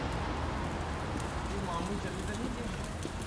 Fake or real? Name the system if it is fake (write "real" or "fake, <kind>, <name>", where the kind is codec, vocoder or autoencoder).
real